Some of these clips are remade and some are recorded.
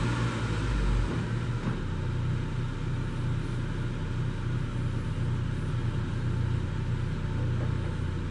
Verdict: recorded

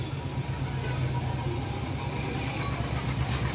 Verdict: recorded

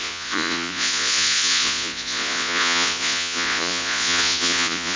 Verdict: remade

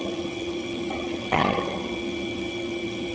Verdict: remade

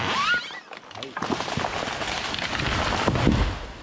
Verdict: recorded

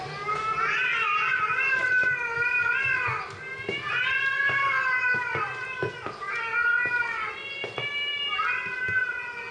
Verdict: recorded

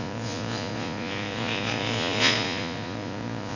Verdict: remade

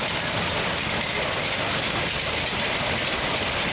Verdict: recorded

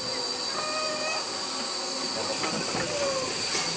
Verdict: recorded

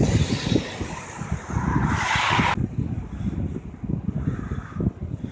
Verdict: recorded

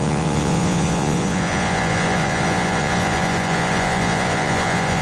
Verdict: remade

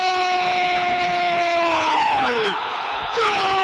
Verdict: remade